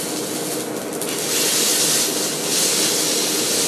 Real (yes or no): yes